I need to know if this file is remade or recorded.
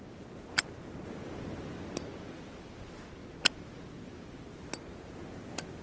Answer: recorded